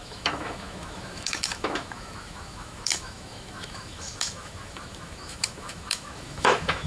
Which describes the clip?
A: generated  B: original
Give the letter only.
A